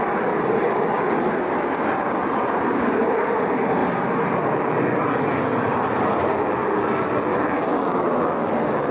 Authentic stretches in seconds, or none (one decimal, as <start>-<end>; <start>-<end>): 3.8-5.0; 6.6-8.9